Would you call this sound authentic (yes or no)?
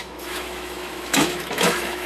no